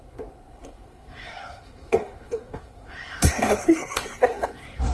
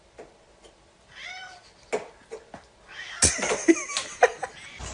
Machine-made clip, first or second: first